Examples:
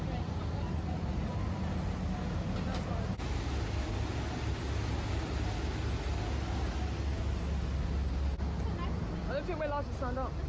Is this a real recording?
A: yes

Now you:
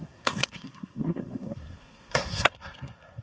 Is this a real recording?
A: no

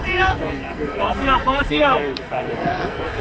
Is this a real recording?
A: no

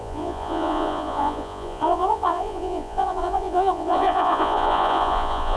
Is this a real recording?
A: no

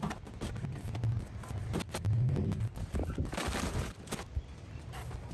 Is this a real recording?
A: yes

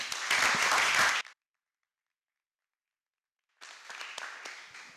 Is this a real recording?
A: yes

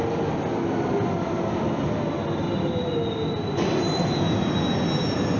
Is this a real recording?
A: yes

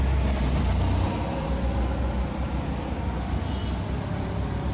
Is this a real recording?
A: yes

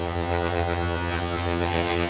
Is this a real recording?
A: no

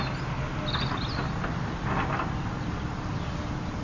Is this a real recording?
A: yes